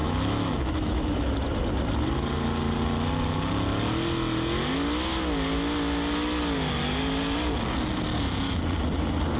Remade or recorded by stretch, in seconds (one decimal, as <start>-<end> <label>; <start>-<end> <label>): 0.0-1.3 remade; 1.3-9.4 recorded